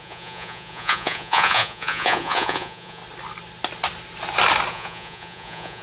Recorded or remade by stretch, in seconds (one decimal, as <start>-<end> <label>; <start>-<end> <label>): 0.0-3.0 remade; 3.0-4.7 recorded; 4.7-5.8 remade